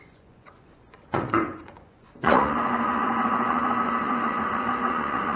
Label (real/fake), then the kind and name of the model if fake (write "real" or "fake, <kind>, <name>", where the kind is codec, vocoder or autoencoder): fake, vocoder, Vocos